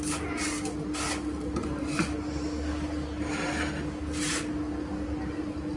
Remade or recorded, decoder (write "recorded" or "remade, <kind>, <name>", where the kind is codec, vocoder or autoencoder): recorded